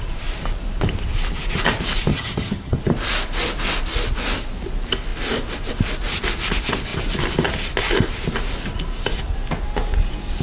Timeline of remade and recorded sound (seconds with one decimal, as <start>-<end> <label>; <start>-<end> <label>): 0.0-2.1 recorded; 2.1-2.8 remade; 2.8-10.4 recorded